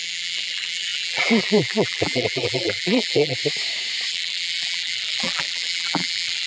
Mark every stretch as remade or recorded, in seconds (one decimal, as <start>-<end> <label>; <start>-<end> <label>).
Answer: 0.0-3.4 remade; 3.4-4.1 recorded; 4.1-6.5 remade